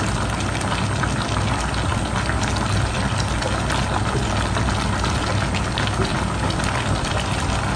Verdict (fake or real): real